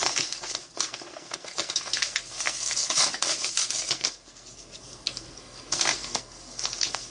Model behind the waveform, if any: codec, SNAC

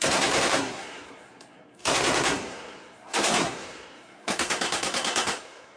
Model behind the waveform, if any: codec, SNAC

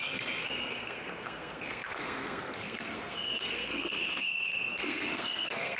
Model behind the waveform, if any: codec, SNAC